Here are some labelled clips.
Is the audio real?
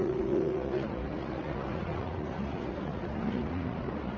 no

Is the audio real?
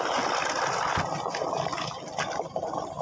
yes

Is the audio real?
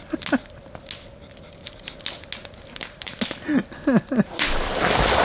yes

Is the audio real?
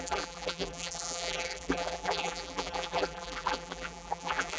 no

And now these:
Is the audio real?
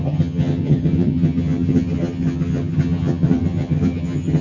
no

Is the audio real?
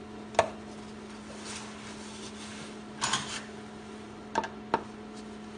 yes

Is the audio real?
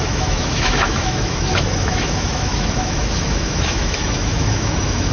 no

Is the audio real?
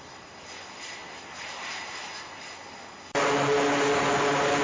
yes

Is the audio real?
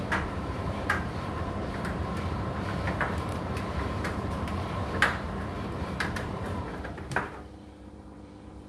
no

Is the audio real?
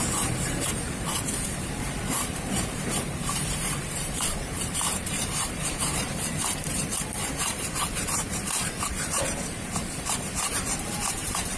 no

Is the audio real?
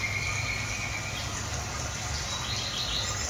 yes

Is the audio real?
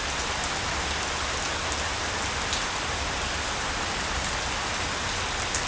yes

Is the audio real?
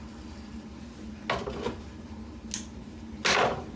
yes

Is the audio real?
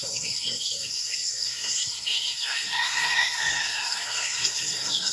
no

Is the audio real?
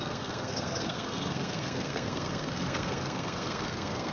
no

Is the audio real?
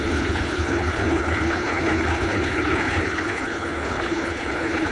no